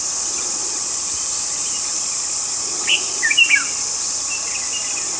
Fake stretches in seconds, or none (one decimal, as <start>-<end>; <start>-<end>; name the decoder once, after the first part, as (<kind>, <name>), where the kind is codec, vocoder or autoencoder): 0.6-3.7 (vocoder, BigVGAN v2)

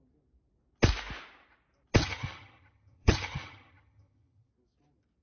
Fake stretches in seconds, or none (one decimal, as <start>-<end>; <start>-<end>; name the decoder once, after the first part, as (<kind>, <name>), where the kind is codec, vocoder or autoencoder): 2.0-4.5 (vocoder, HiFi-GAN)

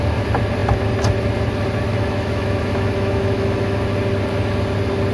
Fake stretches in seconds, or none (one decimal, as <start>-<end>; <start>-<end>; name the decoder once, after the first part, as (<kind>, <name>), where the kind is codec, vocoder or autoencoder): 1.9-3.8 (autoencoder, DAC-VAE)

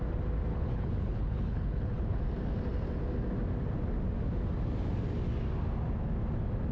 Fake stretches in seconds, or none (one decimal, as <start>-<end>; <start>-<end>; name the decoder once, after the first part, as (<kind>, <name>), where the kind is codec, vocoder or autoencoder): 0.5-2.2 (codec, HILCodec)

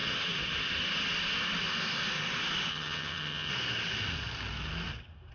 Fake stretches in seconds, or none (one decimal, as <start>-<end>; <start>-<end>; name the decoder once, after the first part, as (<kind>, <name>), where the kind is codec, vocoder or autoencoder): 2.7-3.5 (vocoder, HiFi-GAN)